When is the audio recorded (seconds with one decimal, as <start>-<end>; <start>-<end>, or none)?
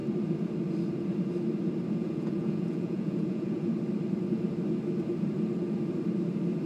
0.0-2.0; 3.7-6.7